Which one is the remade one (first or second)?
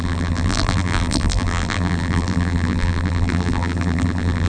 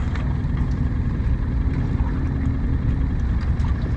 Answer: first